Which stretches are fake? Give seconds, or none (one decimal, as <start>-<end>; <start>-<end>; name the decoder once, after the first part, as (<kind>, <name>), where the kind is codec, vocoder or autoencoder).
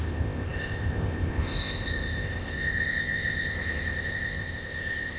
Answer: 0.0-5.2 (codec, ZipCodec)